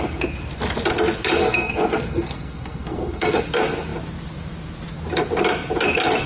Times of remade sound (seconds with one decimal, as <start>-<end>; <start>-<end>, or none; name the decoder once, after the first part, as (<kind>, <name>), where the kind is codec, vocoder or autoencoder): 1.4-3.4 (codec, SNAC)

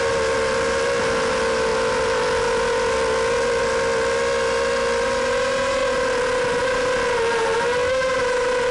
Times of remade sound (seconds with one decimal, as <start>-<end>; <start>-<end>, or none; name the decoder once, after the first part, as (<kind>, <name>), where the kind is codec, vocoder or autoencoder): none

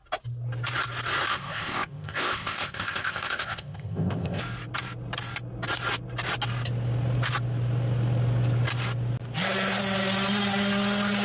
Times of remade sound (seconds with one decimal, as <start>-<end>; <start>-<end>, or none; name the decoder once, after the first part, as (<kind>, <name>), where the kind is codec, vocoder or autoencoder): 1.3-4.4 (codec, ZipCodec)

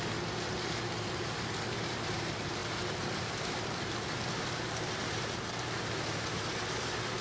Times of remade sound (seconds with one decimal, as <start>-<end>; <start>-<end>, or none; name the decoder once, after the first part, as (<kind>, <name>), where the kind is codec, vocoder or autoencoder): 0.0-7.2 (vocoder, BigVGAN v2)